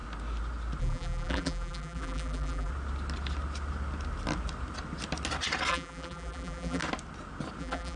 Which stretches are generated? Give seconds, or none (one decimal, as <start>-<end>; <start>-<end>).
0.8-2.7; 5.7-6.8; 7.6-8.0